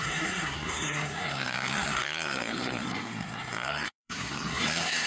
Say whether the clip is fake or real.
fake